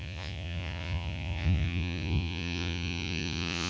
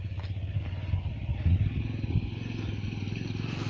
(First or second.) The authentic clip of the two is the second